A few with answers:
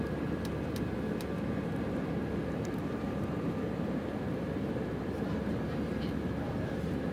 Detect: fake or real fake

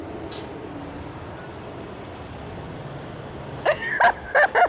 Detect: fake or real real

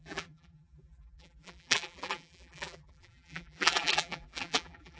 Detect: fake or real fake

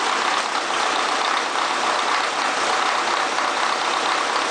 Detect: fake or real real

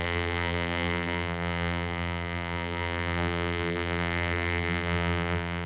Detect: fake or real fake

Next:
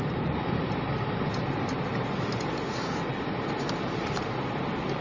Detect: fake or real fake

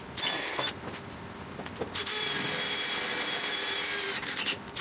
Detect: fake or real real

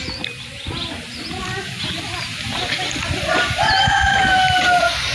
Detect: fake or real real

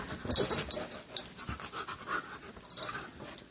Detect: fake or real real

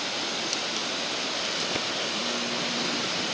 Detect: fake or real real